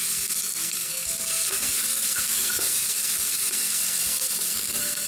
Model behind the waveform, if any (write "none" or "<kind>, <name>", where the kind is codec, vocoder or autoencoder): codec, SNAC